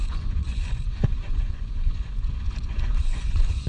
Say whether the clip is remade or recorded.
remade